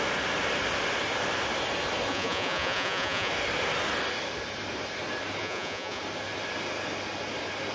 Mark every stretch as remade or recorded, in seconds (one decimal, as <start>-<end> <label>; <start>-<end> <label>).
0.0-2.1 recorded; 2.1-3.3 remade; 3.3-5.4 recorded; 5.4-6.0 remade; 6.0-7.7 recorded